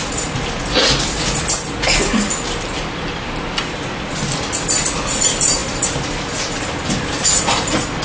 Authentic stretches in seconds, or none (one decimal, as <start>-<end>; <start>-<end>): 0.0-8.0